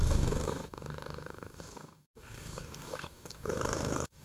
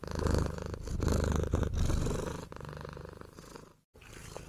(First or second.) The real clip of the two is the second